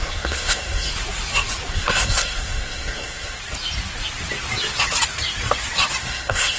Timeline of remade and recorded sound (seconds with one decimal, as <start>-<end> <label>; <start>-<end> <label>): 0.0-0.9 remade; 0.9-1.7 recorded; 1.7-3.4 remade; 3.4-6.0 recorded; 6.0-6.6 remade